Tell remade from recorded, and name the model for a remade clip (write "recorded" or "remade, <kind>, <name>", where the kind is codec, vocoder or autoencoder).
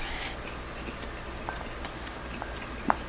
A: recorded